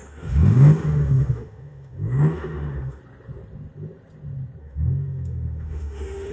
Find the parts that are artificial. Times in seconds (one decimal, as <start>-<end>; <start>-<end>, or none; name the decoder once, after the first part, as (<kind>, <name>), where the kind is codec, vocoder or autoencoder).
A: 0.0-3.0 (autoencoder, DAC-VAE); 4.6-6.3